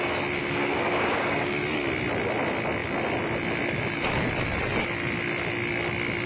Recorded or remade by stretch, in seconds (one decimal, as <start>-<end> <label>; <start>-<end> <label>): 0.0-0.4 recorded; 0.4-1.6 remade; 1.6-6.3 recorded